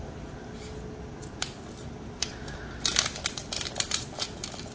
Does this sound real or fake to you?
real